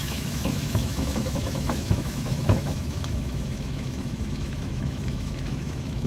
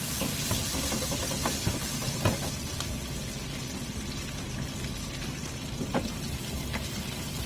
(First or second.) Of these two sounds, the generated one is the first